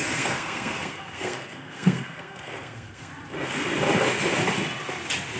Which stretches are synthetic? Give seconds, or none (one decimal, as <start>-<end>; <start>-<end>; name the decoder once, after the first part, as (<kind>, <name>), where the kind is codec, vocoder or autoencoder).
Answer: 0.0-3.1 (codec, SNAC)